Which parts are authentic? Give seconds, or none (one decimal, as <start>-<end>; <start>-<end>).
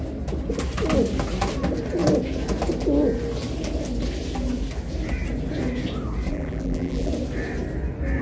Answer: 0.0-6.3; 7.1-8.2